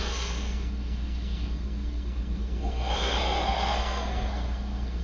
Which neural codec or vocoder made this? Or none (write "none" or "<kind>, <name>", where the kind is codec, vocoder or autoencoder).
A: codec, SNAC